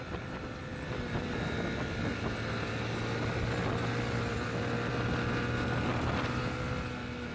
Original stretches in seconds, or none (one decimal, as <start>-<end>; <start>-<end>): 0.0-7.3